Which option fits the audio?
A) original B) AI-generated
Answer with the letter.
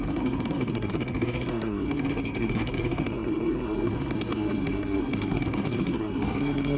B